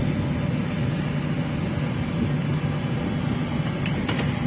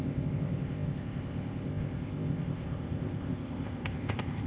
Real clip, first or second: first